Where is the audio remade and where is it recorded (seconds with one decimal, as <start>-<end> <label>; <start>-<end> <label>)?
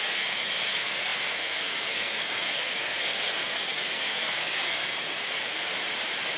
0.0-5.7 remade; 5.7-6.4 recorded